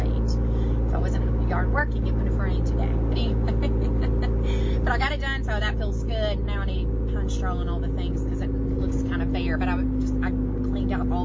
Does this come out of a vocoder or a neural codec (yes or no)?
no